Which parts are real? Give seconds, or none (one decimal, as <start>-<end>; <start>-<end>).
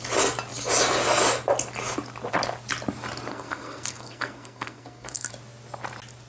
0.0-3.3; 5.3-6.3